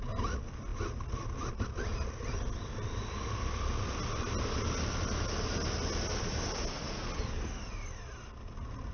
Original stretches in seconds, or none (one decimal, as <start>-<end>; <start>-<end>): 0.0-8.9

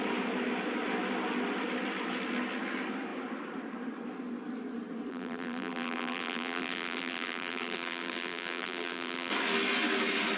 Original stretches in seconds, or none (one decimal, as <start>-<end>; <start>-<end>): 0.0-5.1; 9.3-10.4

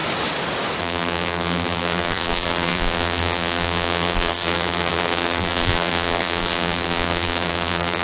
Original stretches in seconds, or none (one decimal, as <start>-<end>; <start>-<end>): 0.0-0.8

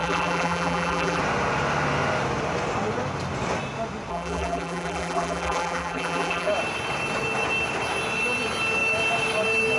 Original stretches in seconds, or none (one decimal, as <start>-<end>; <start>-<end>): 1.2-4.1; 6.5-9.8

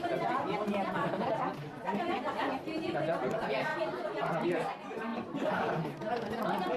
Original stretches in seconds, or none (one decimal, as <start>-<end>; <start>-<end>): 0.0-3.7; 4.3-6.8